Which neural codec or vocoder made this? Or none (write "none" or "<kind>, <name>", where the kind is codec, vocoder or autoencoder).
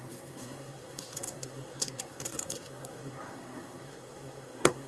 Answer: codec, SNAC